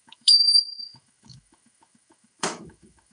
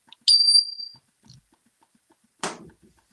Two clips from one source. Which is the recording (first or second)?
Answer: second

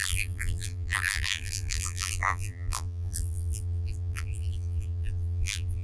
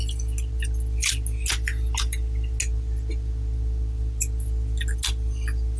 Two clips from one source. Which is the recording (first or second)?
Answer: second